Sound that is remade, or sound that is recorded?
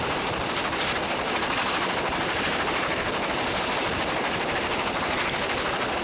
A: recorded